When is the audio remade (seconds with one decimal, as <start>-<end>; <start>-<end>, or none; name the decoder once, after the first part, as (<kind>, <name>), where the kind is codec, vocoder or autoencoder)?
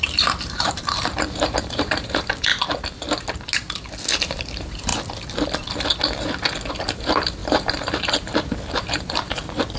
0.0-2.5 (vocoder, BigVGAN v2); 4.2-4.9; 6.7-9.8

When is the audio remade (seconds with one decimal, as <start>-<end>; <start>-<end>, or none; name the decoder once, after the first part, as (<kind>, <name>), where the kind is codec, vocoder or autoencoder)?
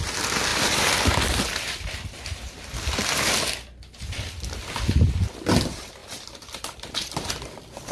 0.5-5.1 (vocoder, BigVGAN v2); 6.0-7.3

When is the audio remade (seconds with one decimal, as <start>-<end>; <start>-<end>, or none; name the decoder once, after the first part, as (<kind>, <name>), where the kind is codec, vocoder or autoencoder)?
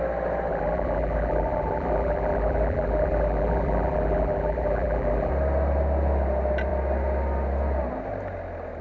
0.5-5.3 (vocoder, BigVGAN v2)